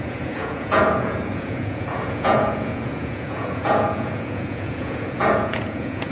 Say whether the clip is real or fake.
fake